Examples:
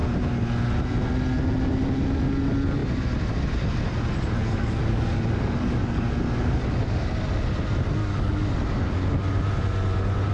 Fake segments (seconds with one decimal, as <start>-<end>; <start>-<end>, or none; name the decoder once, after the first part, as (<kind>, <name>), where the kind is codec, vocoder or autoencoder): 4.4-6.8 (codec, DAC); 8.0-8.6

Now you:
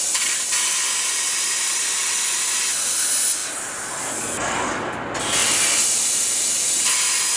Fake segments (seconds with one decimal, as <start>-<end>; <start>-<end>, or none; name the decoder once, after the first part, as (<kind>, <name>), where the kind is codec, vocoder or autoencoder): none

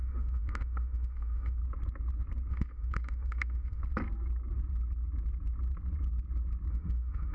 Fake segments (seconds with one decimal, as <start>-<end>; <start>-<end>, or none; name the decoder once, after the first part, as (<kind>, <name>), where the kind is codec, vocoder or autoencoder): 0.0-1.6 (autoencoder, DAC-VAE); 2.5-3.8; 6.7-7.3

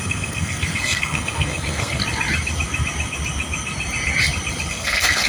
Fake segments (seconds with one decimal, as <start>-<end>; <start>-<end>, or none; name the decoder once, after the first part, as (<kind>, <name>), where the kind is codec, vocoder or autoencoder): 0.0-2.0 (codec, SNAC); 4.7-5.3

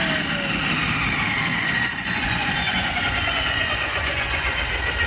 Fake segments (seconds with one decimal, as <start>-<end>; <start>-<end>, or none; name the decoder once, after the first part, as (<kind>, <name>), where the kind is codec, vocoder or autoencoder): 1.5-4.6 (vocoder, Vocos)